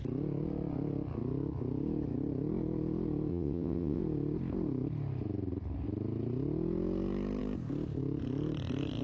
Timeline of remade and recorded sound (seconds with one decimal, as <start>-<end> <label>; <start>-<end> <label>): 0.0-3.3 recorded; 3.3-4.0 remade; 4.0-9.0 recorded